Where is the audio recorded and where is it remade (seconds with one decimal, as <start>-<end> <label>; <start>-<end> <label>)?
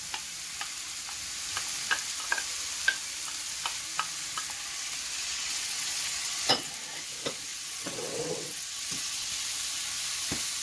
0.0-5.2 recorded; 5.2-6.7 remade; 6.7-7.5 recorded; 7.5-9.3 remade; 9.3-10.6 recorded